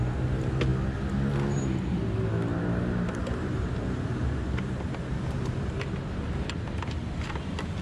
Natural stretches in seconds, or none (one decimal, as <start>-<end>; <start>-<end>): 0.0-2.5; 6.8-7.8